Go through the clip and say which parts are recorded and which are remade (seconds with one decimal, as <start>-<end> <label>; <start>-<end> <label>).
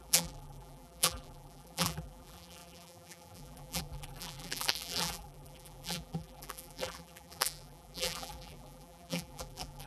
0.0-9.9 remade